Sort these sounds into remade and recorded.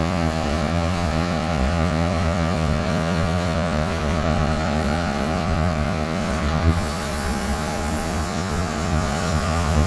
remade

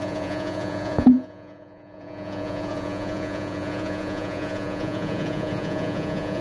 remade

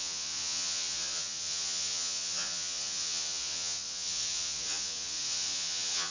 remade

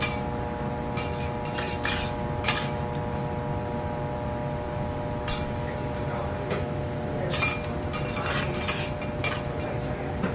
recorded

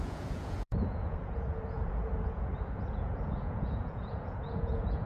remade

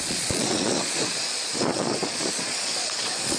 remade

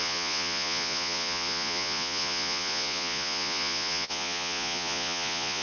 remade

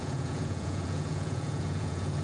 remade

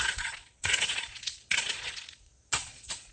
remade